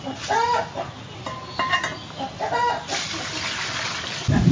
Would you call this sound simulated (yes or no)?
no